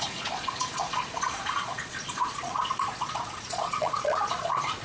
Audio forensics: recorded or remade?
remade